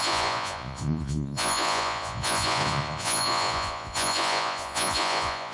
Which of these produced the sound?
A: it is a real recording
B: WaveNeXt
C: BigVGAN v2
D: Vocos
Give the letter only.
D